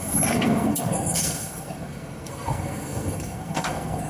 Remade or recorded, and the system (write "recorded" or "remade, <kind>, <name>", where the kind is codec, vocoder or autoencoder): remade, codec, SNAC